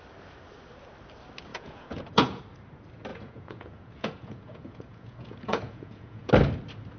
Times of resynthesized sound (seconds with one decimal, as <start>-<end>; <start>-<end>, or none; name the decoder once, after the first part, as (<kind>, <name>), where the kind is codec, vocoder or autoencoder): 1.5-2.4 (vocoder, Vocos); 3.1-6.3